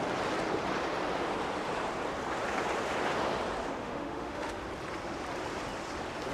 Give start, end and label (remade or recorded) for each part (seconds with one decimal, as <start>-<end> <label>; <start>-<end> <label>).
0.0-3.8 recorded; 3.8-4.6 remade; 4.6-6.3 recorded

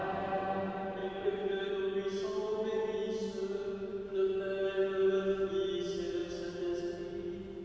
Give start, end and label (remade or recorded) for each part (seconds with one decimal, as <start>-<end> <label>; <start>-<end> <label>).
0.0-1.0 recorded; 1.0-1.7 remade; 1.7-3.9 recorded; 3.9-4.4 remade; 4.4-7.6 recorded

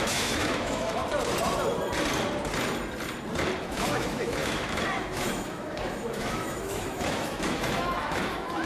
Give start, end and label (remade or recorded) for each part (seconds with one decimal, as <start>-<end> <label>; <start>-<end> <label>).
0.0-1.0 remade; 1.0-3.6 recorded; 3.6-8.7 remade